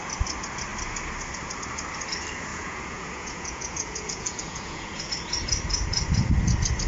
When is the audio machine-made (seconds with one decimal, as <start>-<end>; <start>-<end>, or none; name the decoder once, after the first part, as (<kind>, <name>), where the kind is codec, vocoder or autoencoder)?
2.5-5.1 (vocoder, Vocos)